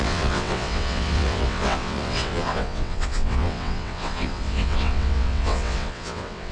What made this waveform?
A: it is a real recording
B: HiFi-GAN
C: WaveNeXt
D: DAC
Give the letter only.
C